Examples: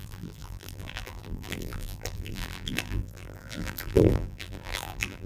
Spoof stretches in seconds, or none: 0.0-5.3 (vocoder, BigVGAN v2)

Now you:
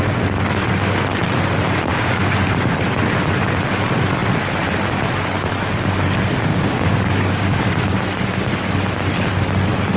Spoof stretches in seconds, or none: 1.9-2.5 (codec, DAC); 6.5-7.6

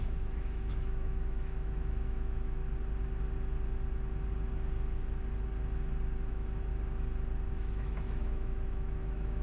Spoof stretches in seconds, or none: 0.0-2.6 (autoencoder, DAC-VAE); 6.3-6.7; 7.5-9.4